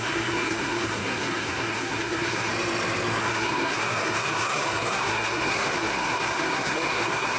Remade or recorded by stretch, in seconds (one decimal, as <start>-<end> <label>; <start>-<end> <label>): 0.0-2.5 remade; 2.5-3.2 recorded; 3.2-7.4 remade